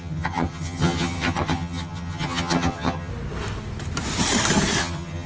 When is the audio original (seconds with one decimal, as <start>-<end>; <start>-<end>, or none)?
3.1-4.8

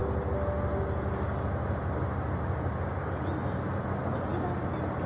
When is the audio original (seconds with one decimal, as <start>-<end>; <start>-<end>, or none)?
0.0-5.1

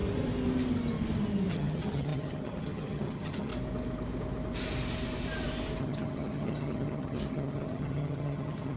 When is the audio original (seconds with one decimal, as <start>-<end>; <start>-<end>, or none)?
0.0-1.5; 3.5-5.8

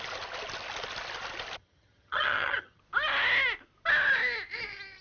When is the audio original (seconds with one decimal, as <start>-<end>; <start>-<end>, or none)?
0.0-1.6; 2.8-5.0

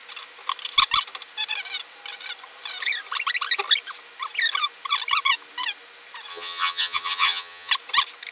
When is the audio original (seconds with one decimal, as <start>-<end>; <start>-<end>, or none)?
0.0-6.3; 7.7-8.3

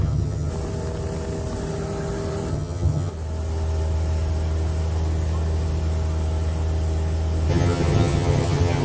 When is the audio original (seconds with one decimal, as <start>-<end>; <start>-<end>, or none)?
0.5-2.5; 3.1-7.5

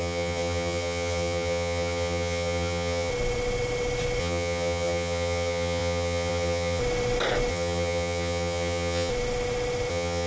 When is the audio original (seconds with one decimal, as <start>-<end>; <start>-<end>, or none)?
3.1-4.2; 6.8-7.5; 9.1-9.9

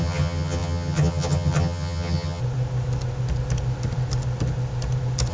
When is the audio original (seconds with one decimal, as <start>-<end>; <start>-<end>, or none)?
2.4-5.3